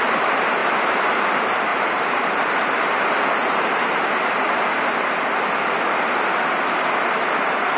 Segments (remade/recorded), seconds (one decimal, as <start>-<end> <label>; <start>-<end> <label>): 0.0-1.7 recorded; 1.7-2.3 remade; 2.3-3.4 recorded; 3.4-4.0 remade; 4.0-7.8 recorded